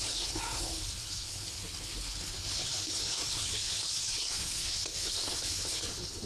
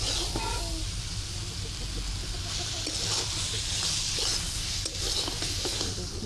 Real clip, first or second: second